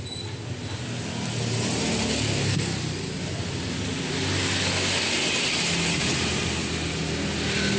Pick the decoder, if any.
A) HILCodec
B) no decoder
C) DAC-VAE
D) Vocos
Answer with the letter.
B